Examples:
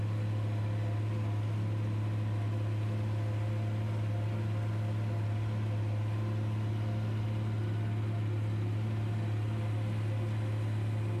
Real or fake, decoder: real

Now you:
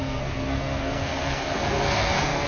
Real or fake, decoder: fake, codec, SNAC